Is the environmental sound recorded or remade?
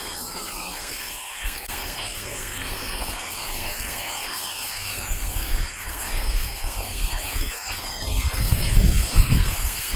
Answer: remade